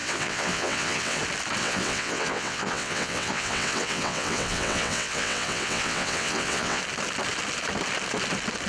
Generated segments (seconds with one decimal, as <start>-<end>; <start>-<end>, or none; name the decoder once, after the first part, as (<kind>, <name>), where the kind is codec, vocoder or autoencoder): 0.0-1.2 (vocoder, WaveNeXt); 1.6-6.8